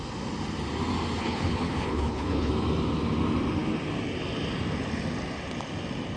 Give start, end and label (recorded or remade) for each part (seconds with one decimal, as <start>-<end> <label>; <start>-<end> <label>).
0.0-1.2 recorded; 1.2-2.5 remade; 2.5-6.2 recorded